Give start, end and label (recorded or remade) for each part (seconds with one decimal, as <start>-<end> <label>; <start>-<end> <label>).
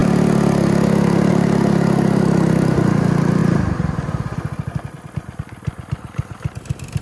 0.0-7.0 recorded